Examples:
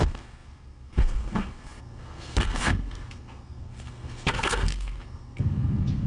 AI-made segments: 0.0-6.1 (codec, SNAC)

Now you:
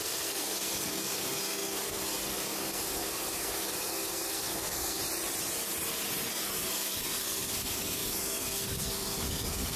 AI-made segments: 0.0-5.0 (codec, SNAC); 6.3-9.8

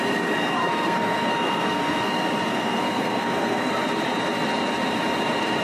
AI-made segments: 0.6-2.1 (codec, SNAC); 2.5-3.7

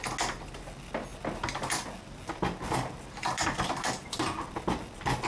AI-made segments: none